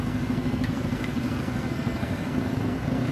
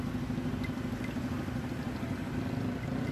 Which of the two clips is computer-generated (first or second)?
first